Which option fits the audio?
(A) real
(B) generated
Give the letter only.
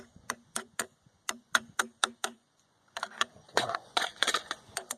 B